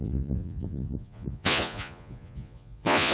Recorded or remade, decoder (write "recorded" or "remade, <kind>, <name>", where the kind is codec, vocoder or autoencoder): remade, vocoder, Vocos